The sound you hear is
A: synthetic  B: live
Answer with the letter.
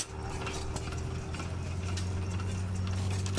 B